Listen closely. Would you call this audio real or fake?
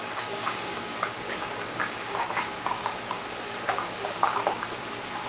fake